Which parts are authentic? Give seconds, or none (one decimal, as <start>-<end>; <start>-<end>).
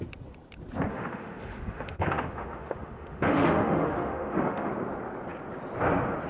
0.0-0.9; 4.7-6.3